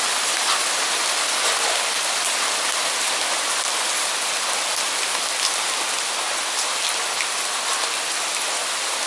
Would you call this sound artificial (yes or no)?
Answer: no